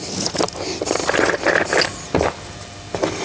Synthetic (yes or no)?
no